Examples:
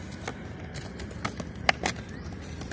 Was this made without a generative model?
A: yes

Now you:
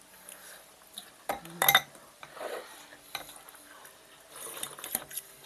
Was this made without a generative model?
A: yes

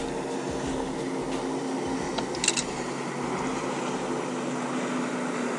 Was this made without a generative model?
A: yes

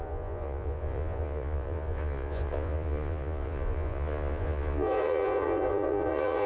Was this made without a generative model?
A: no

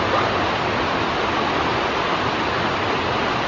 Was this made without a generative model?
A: yes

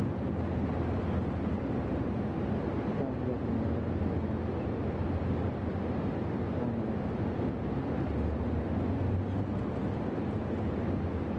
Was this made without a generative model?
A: yes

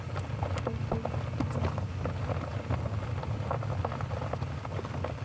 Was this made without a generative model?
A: yes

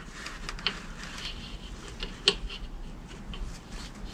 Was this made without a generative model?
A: yes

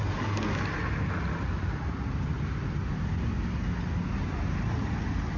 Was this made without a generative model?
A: yes